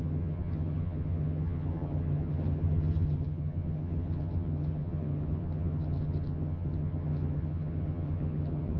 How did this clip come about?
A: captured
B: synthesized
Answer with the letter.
B